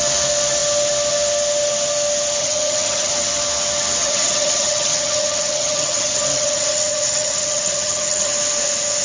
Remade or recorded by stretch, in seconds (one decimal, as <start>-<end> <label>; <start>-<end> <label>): 0.0-2.4 recorded; 2.4-3.1 remade; 3.1-4.0 recorded; 4.0-8.3 remade; 8.3-9.0 recorded